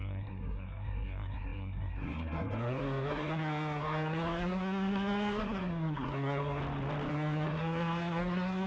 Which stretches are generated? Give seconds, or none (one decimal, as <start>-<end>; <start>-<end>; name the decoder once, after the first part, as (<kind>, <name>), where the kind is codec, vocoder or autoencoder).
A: 0.0-6.6 (codec, SNAC); 7.1-8.7

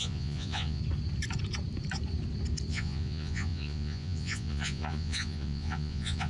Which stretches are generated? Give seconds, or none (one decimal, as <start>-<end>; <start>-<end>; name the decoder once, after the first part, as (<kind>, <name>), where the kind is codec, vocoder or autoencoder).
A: 0.0-0.8 (vocoder, Vocos); 2.7-6.3

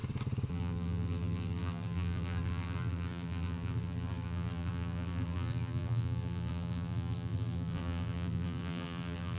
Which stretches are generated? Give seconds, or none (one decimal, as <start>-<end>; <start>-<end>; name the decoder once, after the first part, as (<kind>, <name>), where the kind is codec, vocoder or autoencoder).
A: 0.5-9.4 (vocoder, BigVGAN v2)

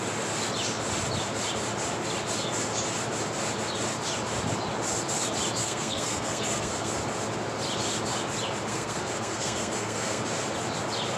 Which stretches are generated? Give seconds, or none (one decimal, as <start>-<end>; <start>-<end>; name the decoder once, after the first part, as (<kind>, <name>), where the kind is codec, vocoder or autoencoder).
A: 5.6-6.9 (codec, SNAC); 8.7-10.2

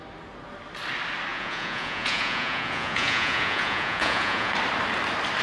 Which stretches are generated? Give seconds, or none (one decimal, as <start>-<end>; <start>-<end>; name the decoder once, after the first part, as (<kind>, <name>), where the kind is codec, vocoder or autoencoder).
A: 1.3-4.5 (vocoder, Vocos)

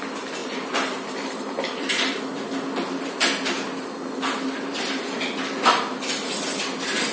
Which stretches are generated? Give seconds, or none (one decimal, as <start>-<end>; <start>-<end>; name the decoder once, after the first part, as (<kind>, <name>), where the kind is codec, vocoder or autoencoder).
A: 0.4-2.2 (vocoder, BigVGAN v2)

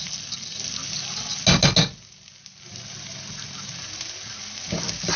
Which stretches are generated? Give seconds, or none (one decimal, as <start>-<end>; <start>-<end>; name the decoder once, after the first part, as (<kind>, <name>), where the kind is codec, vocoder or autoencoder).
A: none

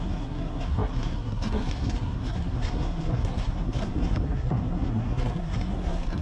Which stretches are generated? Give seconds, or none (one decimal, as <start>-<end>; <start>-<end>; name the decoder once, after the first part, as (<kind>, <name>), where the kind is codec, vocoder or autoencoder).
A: 0.0-6.2 (codec, SNAC)